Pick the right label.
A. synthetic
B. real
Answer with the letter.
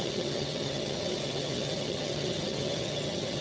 A